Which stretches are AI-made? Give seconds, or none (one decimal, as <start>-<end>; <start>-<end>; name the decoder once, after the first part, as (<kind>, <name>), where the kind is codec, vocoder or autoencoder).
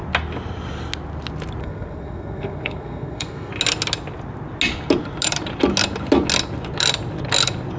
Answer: 1.6-3.5 (codec, SNAC)